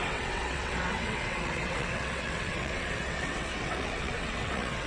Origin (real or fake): fake